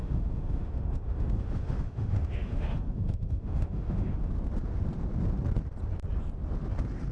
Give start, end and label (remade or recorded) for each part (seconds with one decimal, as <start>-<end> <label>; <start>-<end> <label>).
0.0-4.3 remade; 4.3-7.1 recorded

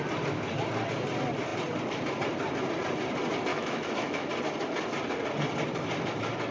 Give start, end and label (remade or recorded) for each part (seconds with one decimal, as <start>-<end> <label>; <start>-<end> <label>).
0.0-3.5 recorded; 3.5-4.3 remade; 4.3-6.5 recorded

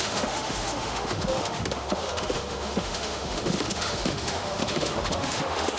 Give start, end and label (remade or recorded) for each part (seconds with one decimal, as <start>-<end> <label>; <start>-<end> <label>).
0.0-5.8 remade

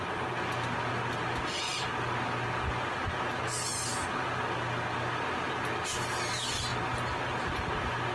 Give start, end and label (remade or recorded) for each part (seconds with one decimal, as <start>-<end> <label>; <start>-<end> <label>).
0.0-8.1 recorded

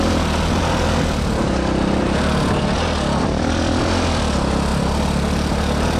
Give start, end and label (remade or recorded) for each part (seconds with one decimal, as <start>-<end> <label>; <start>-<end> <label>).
0.0-6.0 recorded

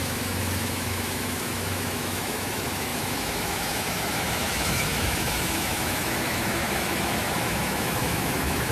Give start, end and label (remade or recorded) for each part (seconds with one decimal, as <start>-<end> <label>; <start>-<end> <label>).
0.0-8.7 remade

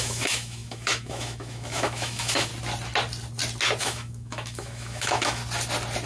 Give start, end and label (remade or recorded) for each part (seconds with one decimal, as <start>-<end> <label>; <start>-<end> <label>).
0.0-2.5 remade; 2.5-3.8 recorded; 3.8-5.4 remade; 5.4-6.1 recorded